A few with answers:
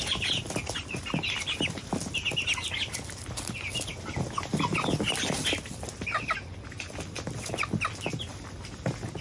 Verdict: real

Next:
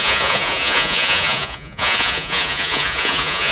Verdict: fake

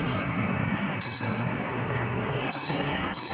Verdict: fake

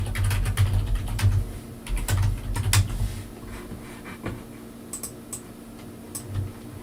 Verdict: real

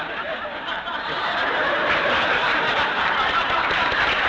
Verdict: fake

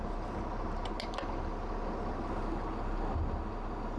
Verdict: real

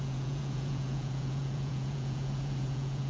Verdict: fake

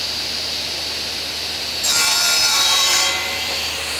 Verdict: fake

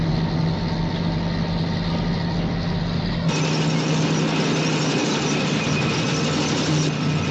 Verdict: real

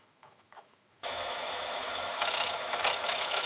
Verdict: fake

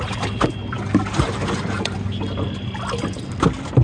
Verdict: real